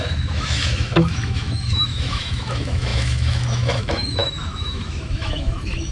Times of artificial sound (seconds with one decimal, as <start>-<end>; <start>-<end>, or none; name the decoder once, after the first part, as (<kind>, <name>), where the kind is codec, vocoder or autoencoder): 0.0-5.9 (autoencoder, DAC-VAE)